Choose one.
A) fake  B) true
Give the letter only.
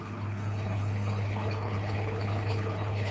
A